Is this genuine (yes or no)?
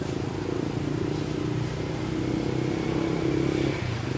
yes